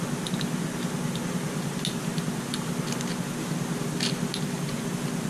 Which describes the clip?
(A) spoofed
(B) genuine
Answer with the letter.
B